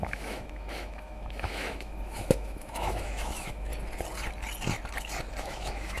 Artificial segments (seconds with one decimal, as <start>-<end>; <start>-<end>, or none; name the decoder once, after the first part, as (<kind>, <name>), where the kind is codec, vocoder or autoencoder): 0.0-3.7 (autoencoder, DAC-VAE); 5.4-6.0